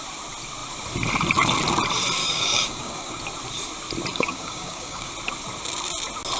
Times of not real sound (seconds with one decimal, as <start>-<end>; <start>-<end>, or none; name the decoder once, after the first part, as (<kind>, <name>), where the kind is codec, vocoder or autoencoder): 2.2-3.2 (codec, DAC); 4.1-5.1

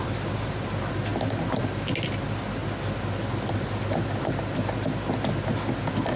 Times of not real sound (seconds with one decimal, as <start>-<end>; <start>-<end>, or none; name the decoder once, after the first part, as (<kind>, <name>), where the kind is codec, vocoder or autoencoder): none

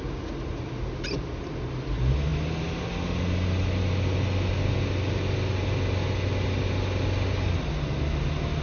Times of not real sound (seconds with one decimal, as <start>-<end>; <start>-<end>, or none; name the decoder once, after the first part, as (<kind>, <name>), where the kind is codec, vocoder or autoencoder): none

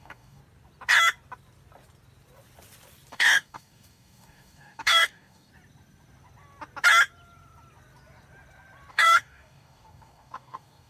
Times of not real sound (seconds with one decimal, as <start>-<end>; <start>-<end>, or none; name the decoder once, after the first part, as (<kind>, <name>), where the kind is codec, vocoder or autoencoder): 0.0-0.4 (codec, DAC); 3.1-5.5; 8.9-10.9

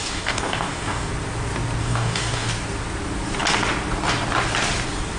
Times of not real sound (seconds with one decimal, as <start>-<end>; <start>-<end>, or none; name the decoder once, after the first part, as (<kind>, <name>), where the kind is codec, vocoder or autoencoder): 0.0-1.1 (codec, DAC); 1.8-2.5